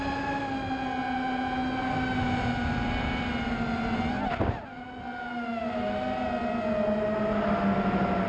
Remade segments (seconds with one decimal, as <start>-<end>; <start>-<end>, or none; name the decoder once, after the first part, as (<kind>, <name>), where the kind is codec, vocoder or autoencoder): none